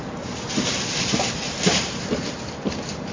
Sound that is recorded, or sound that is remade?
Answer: remade